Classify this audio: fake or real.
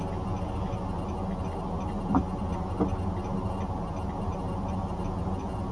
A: real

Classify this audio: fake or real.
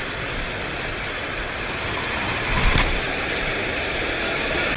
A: real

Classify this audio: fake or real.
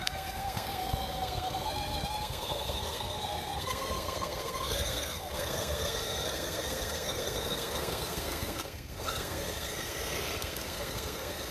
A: fake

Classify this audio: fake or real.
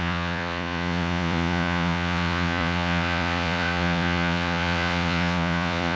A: fake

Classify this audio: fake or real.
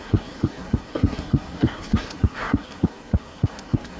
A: fake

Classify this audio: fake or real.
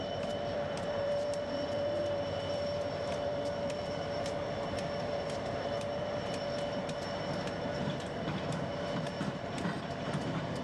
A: fake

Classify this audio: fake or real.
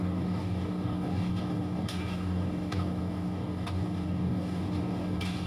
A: fake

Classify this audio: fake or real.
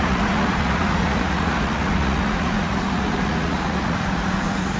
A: fake